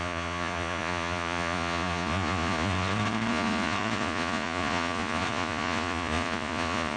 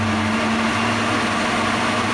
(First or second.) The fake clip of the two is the first